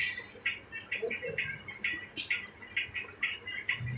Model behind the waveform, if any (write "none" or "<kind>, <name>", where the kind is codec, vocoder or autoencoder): none